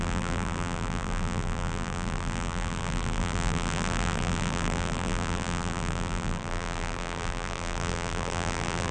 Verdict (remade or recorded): remade